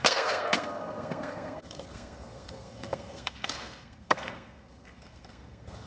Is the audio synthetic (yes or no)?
yes